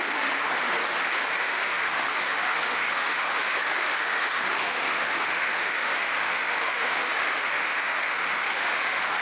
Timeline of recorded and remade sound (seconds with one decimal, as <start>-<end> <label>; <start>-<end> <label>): 0.0-0.5 remade; 0.5-1.4 recorded; 1.4-9.2 remade